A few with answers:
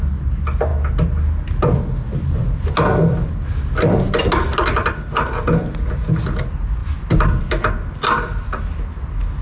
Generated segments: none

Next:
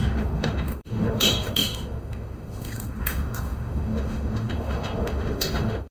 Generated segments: 0.0-5.9

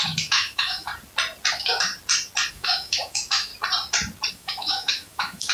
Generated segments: 0.0-0.9; 1.5-1.9; 2.5-3.5; 4.3-5.5

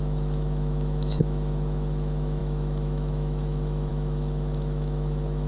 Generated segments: 0.0-5.5

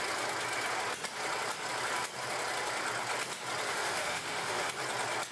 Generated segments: 3.7-4.7